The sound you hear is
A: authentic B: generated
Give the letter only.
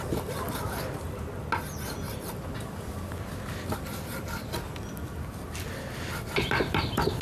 A